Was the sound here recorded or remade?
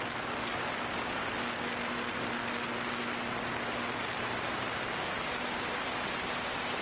recorded